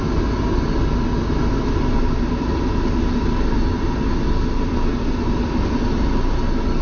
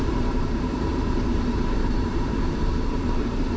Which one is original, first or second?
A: first